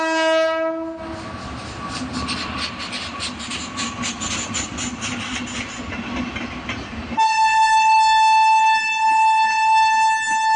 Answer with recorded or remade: recorded